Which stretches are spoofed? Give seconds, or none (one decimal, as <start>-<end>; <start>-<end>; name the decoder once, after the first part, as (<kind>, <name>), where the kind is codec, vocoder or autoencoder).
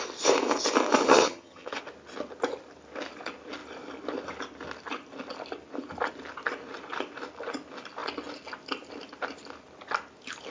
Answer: 1.0-1.8 (vocoder, HiFi-GAN)